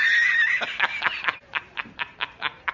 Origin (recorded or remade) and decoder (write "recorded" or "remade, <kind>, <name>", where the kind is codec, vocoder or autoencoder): remade, vocoder, BigVGAN v2